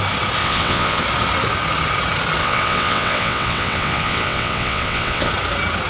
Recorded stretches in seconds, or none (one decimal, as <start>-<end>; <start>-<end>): 0.0-0.4; 1.0-2.4; 5.3-5.9